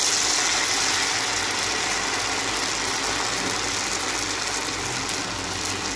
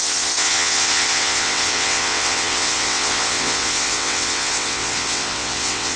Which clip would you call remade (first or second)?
second